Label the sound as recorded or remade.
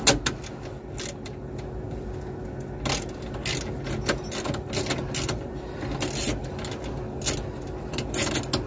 recorded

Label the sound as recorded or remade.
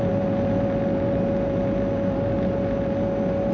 recorded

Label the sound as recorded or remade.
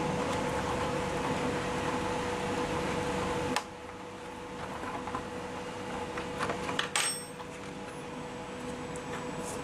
recorded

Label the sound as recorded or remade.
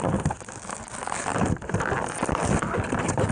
recorded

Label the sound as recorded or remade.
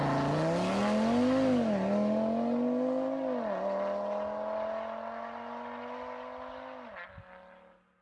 recorded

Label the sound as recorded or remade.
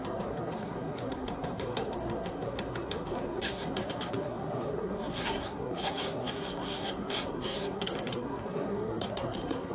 remade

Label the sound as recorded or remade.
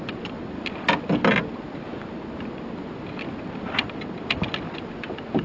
recorded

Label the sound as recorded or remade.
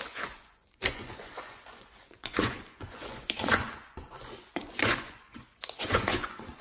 remade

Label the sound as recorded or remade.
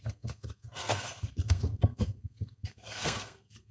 remade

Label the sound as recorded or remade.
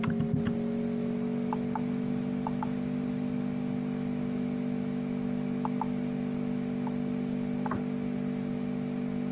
recorded